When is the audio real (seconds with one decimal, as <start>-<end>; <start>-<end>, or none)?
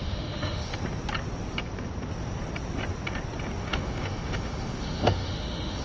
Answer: 0.7-3.6